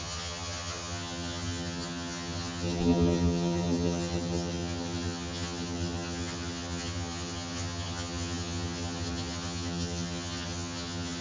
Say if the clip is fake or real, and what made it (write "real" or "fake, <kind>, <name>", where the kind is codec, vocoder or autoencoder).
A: fake, vocoder, HiFi-GAN